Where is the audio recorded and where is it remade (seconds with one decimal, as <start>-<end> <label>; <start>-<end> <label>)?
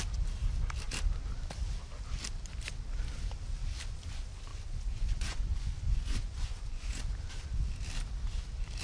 0.0-4.5 recorded; 4.5-7.0 remade; 7.0-8.8 recorded